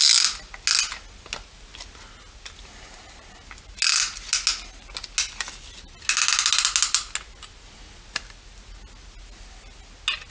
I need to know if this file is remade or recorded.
recorded